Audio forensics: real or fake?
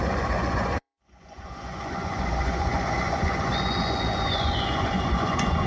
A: fake